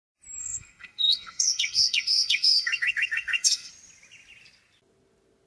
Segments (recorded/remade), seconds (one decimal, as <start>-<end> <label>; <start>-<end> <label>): 0.0-0.4 recorded; 0.4-3.7 remade; 3.7-5.5 recorded